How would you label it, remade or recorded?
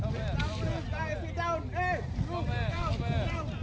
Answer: recorded